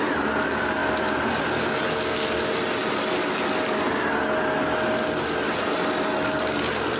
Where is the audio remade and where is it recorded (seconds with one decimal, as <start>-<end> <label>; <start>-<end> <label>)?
0.0-7.0 recorded